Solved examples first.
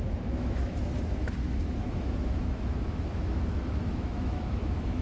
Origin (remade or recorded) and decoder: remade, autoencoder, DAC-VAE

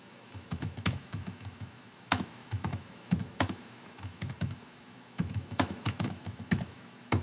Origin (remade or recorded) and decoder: remade, autoencoder, DAC-VAE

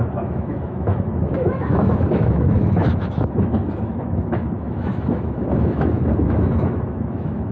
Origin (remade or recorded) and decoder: remade, autoencoder, DAC-VAE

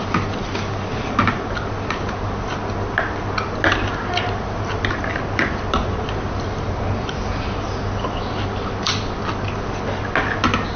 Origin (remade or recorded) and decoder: recorded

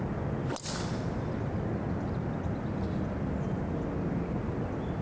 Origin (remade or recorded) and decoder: recorded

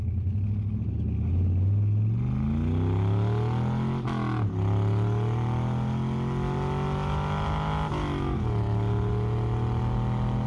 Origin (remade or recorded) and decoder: recorded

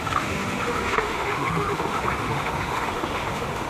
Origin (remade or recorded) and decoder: remade, autoencoder, DAC-VAE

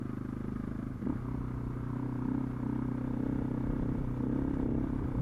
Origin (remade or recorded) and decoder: recorded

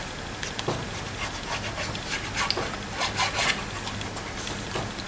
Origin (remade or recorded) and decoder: recorded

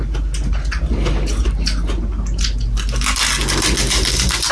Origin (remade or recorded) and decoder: recorded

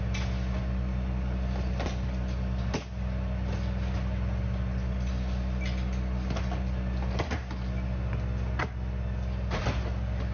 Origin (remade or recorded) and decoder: recorded